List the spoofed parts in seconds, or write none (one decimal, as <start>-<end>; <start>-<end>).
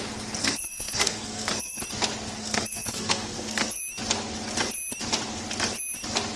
0.4-1.8; 2.4-3.8